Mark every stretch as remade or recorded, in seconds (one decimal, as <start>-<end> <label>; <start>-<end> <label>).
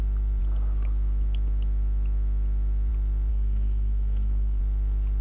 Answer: 0.0-3.3 recorded; 3.3-4.6 remade; 4.6-5.2 recorded